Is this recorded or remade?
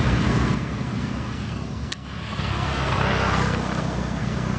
remade